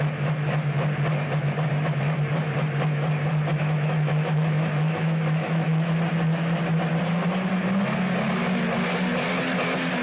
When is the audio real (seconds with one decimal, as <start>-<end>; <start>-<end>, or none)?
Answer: 0.0-3.5; 5.9-10.0